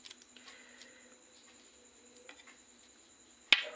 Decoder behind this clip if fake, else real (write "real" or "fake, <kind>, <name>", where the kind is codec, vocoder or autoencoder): real